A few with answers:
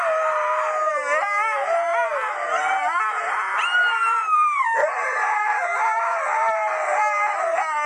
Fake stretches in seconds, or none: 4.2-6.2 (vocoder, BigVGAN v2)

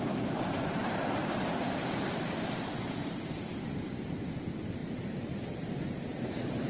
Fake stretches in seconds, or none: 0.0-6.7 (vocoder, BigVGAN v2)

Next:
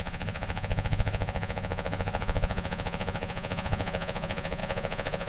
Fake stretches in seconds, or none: 0.0-5.3 (vocoder, Vocos)

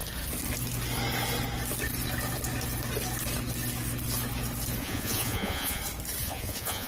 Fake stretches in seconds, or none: 4.8-5.8 (vocoder, Vocos); 6.2-6.9

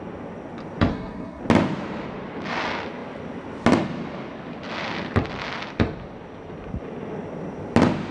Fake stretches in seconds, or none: 0.9-1.4 (codec, SNAC)

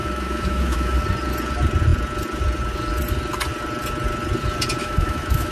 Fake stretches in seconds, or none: 0.0-1.0 (autoencoder, DAC-VAE); 4.8-5.5

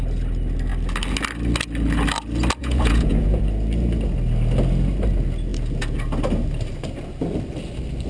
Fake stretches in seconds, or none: 2.6-3.4 (vocoder, Vocos)